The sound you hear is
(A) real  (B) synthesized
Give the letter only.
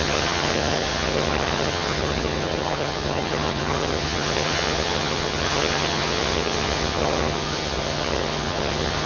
B